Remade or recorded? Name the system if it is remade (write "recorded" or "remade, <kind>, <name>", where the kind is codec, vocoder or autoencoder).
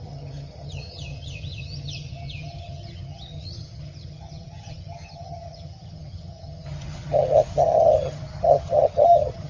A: remade, vocoder, HiFi-GAN